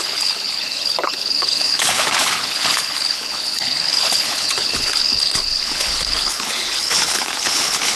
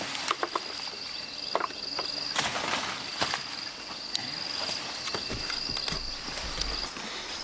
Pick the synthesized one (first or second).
first